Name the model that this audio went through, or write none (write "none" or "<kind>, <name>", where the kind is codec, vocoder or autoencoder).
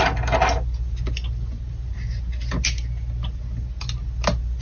none